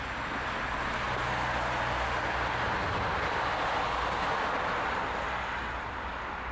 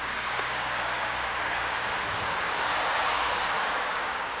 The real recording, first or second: first